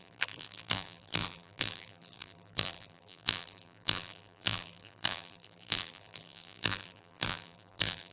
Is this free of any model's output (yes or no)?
no